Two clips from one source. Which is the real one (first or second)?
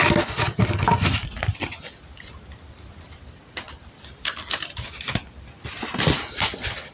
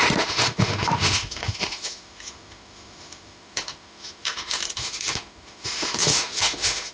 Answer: first